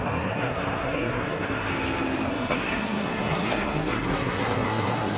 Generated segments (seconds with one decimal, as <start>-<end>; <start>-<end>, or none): 0.0-1.7; 2.3-5.2